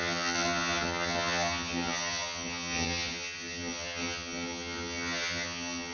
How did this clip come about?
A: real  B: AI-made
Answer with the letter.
B